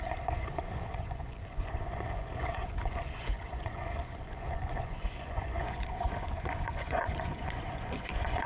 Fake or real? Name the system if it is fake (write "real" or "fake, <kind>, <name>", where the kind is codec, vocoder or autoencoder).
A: fake, vocoder, Vocos